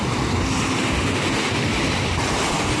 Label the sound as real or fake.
real